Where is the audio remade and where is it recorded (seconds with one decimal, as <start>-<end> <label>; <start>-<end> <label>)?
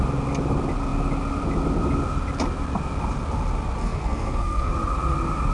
0.0-3.8 recorded; 3.8-4.7 remade; 4.7-5.5 recorded